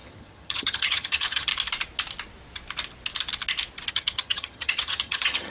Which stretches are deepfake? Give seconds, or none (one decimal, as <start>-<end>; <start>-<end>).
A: 0.0-1.5; 3.9-5.5